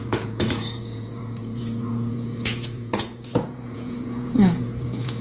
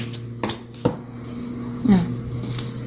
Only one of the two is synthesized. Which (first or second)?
first